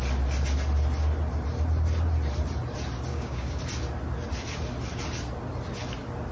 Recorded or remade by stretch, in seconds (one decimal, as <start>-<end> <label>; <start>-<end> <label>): 0.0-3.1 recorded; 3.1-3.6 remade; 3.6-6.3 recorded